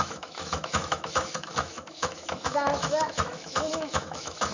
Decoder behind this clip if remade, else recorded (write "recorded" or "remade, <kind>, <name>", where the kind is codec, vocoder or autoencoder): remade, autoencoder, DAC-VAE